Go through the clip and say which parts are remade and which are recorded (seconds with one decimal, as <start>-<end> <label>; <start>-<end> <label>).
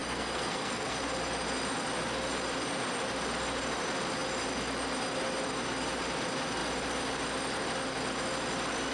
0.0-1.0 remade; 1.0-8.9 recorded